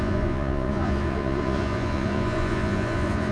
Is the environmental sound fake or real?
fake